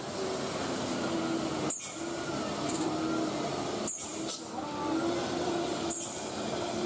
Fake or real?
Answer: real